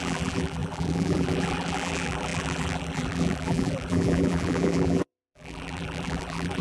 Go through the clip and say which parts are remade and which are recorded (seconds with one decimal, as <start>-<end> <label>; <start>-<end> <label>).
0.0-6.6 remade